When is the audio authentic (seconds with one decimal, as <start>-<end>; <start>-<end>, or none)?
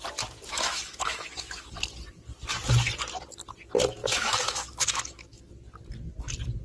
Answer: 0.0-0.5; 1.7-4.0; 5.5-6.6